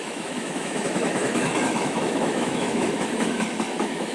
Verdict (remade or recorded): remade